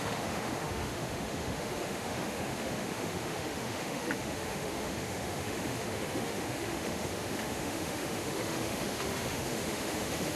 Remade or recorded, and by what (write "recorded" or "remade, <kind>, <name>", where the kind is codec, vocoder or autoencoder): remade, autoencoder, DAC-VAE